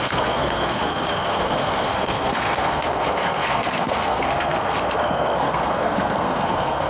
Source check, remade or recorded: remade